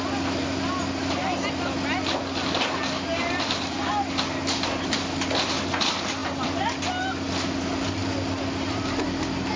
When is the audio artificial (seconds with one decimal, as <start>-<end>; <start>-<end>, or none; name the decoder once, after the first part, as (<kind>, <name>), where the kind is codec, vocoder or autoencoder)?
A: 3.1-3.9 (vocoder, BigVGAN v2)